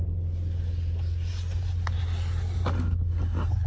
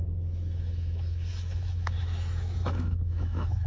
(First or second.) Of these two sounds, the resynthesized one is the second